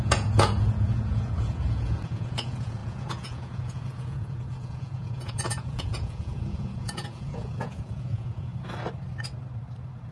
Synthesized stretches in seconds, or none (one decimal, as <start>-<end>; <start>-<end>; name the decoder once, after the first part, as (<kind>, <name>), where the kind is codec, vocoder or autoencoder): 0.0-8.5 (vocoder, Vocos)